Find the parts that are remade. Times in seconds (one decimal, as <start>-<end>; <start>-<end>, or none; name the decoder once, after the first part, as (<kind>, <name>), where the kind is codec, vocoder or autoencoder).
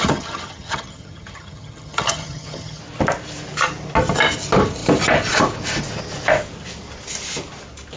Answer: 0.0-2.8 (vocoder, HiFi-GAN)